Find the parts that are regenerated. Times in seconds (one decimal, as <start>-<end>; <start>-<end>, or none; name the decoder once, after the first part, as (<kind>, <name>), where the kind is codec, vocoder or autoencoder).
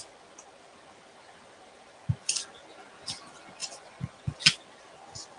3.6-4.4 (vocoder, Vocos)